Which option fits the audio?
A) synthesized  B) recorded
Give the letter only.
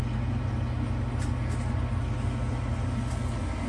B